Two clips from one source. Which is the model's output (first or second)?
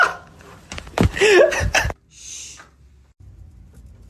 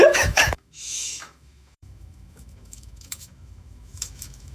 second